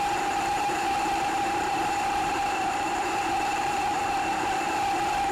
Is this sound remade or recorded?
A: remade